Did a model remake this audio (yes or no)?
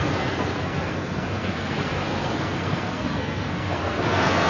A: yes